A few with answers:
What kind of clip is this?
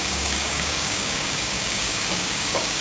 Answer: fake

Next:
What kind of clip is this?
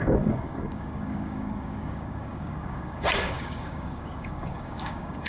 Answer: fake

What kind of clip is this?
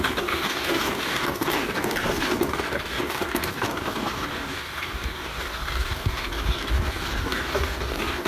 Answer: fake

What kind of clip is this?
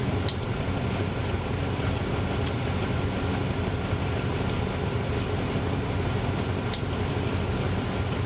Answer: real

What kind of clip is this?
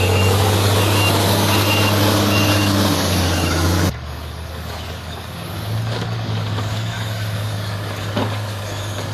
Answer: fake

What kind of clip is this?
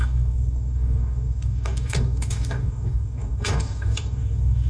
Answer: fake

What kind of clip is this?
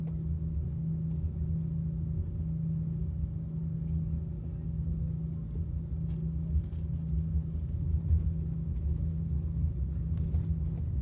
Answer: real